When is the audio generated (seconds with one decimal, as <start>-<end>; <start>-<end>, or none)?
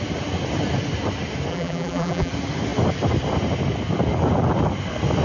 1.5-2.3